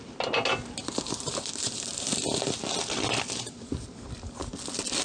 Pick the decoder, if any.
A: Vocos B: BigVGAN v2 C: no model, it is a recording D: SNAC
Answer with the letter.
C